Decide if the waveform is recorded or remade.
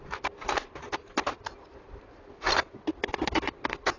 recorded